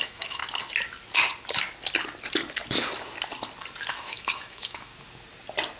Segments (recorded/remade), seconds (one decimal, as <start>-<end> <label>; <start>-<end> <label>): 0.0-0.4 remade; 0.4-3.9 recorded; 3.9-4.9 remade; 4.9-5.8 recorded